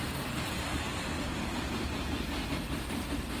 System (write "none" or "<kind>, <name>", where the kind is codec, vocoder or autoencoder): none